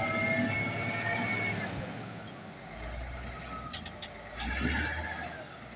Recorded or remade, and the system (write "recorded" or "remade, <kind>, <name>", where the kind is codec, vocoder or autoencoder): recorded